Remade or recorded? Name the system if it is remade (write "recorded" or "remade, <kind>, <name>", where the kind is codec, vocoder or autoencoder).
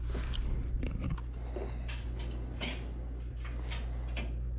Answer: recorded